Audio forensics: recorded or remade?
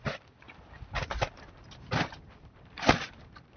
remade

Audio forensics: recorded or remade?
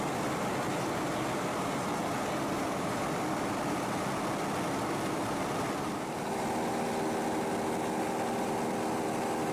recorded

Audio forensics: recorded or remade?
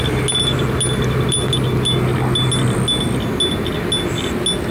recorded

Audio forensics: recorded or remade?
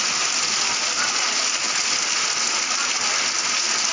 recorded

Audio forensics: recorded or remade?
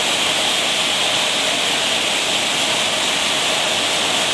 recorded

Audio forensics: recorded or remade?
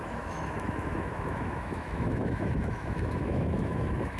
remade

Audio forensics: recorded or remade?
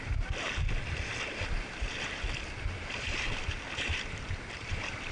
recorded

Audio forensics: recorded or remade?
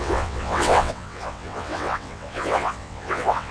remade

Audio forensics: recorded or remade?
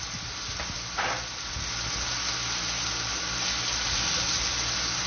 recorded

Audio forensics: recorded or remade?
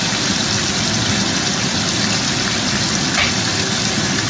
recorded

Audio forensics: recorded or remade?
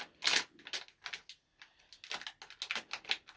recorded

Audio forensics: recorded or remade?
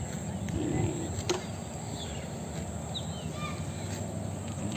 recorded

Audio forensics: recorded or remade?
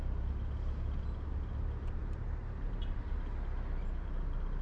recorded